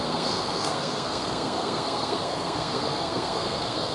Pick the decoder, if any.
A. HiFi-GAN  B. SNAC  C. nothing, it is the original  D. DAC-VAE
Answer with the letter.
B